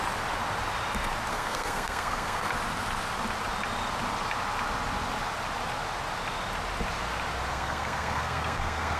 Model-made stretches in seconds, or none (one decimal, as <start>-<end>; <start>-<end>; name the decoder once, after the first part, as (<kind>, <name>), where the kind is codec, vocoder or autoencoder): 1.3-2.5 (codec, SNAC); 7.5-9.0